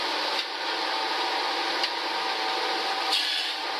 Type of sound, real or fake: real